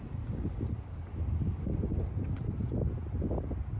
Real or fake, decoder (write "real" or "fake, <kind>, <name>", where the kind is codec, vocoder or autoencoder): real